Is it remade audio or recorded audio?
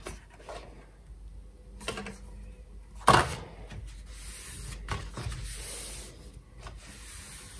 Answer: recorded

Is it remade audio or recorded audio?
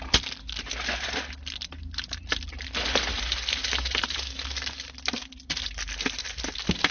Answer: remade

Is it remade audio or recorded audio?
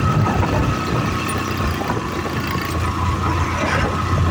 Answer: recorded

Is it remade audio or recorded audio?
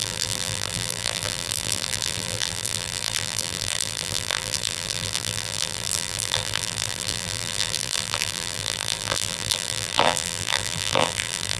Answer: remade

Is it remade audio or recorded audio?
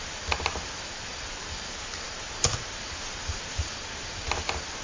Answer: remade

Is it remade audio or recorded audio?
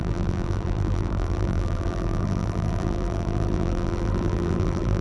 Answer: remade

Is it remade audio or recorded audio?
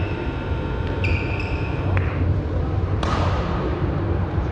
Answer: remade